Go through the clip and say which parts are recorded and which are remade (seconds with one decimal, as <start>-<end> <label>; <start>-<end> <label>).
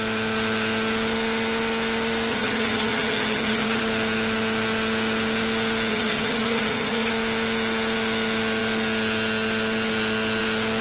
0.0-2.3 recorded; 2.3-3.8 remade; 3.8-5.9 recorded; 5.9-7.1 remade; 7.1-10.8 recorded